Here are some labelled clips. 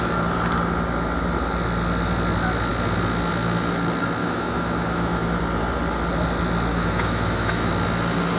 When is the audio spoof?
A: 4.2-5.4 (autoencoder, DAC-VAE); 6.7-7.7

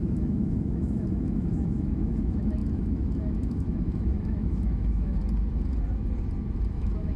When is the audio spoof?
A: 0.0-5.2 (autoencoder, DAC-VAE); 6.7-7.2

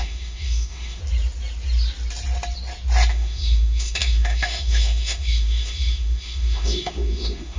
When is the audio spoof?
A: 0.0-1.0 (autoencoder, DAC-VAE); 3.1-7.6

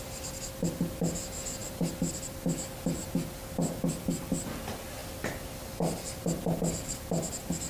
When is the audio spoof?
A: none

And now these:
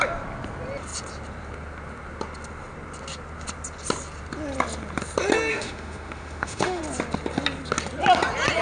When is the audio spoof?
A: 5.5-6.8 (autoencoder, DAC-VAE)

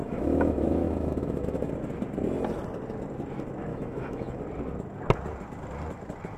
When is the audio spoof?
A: 0.0-1.7 (autoencoder, DAC-VAE); 3.7-4.4

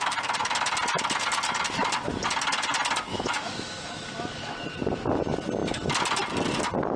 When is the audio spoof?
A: 3.1-4.5 (autoencoder, DAC-VAE)

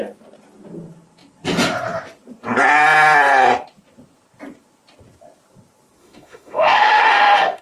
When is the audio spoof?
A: 6.0-7.6 (autoencoder, DAC-VAE)